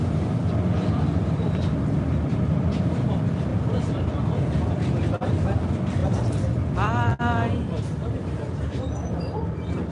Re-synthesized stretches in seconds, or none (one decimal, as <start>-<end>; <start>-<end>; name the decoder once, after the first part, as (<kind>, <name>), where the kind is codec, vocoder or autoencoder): 0.0-1.7 (vocoder, BigVGAN v2); 2.2-3.5; 4.7-9.9